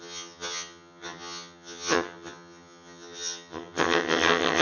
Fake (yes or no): yes